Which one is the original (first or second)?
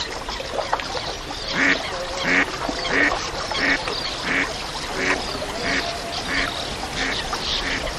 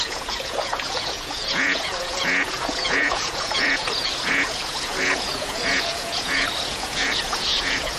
first